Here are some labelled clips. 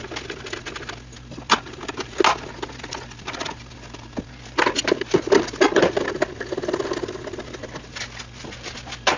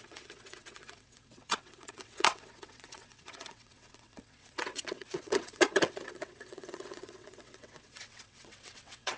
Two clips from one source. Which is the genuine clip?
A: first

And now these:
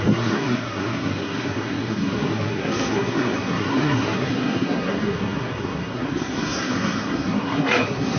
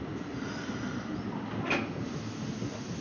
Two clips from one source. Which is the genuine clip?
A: second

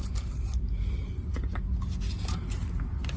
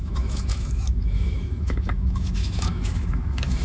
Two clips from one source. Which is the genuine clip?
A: first